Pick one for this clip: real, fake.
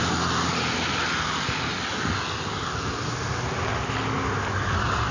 real